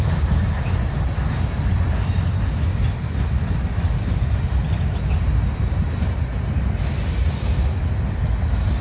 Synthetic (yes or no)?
no